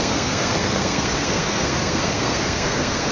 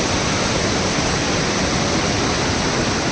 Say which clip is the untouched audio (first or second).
second